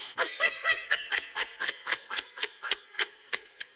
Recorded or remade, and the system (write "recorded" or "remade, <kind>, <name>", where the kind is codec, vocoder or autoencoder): remade, codec, SNAC